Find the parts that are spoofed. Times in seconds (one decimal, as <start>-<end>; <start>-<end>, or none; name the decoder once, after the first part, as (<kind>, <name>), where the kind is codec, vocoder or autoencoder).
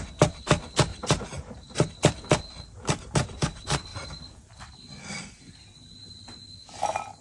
0.9-1.9 (vocoder, BigVGAN v2); 3.9-4.6